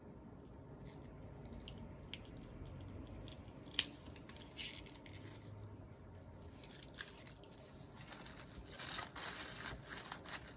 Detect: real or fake real